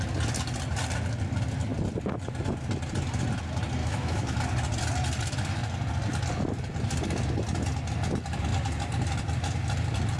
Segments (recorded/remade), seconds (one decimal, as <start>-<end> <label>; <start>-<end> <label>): 0.0-3.8 recorded; 3.8-4.4 remade; 4.4-10.2 recorded